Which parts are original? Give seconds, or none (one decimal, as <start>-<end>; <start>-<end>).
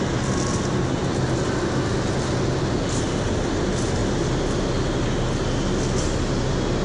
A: 0.0-6.8